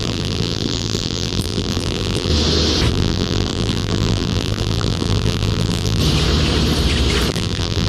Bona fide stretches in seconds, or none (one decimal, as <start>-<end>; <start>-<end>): 2.3-2.9; 6.0-7.3